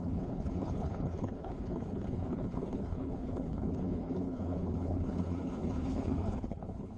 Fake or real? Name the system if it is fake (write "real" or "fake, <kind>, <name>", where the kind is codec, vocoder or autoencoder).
fake, codec, HILCodec